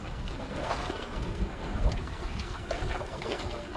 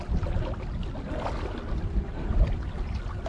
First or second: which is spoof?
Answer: first